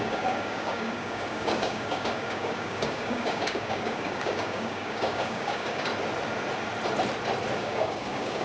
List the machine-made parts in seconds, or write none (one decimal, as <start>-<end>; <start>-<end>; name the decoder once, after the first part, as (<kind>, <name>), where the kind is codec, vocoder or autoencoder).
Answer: 0.0-5.9 (codec, DAC); 7.6-8.4